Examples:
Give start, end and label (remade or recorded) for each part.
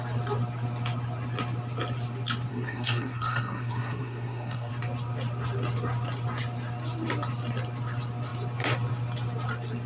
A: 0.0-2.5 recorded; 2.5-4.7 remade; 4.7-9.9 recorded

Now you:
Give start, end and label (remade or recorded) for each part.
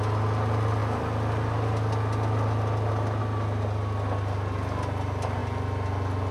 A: 0.0-6.3 recorded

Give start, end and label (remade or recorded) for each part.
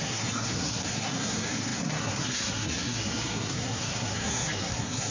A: 0.0-5.1 remade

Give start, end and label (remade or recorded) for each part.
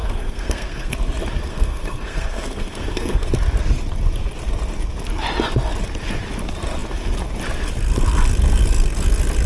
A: 0.0-0.9 remade; 0.9-1.4 recorded; 1.4-3.3 remade; 3.3-9.5 recorded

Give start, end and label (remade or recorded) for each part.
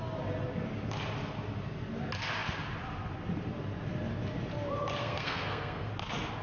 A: 0.0-5.0 recorded; 5.0-5.9 remade; 5.9-6.4 recorded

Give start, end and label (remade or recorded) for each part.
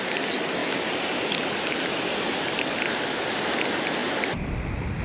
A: 0.0-5.0 recorded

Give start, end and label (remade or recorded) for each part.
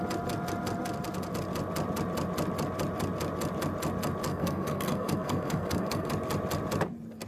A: 0.0-4.3 recorded; 4.3-6.1 remade; 6.1-7.3 recorded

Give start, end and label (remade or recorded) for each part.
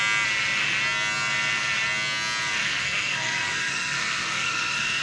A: 0.0-2.6 recorded; 2.6-5.0 remade